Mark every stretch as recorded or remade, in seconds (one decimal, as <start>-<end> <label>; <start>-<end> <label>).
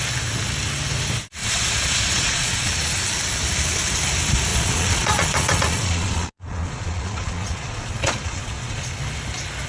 0.0-1.4 recorded; 1.4-2.8 remade; 2.8-4.5 recorded; 4.5-8.9 remade; 8.9-9.7 recorded